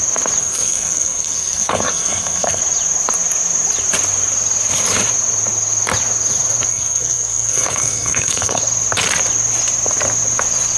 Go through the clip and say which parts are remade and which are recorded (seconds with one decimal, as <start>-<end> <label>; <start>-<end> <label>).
0.0-0.4 recorded; 0.4-2.6 remade; 2.6-6.7 recorded; 6.7-8.6 remade; 8.6-10.8 recorded